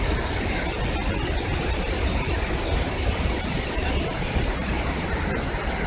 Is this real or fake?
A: real